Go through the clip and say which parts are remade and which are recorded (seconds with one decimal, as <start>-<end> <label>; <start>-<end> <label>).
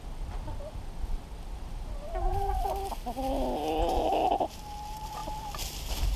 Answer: 0.0-6.2 recorded